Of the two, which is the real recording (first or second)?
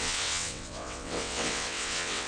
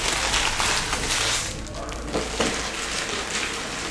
second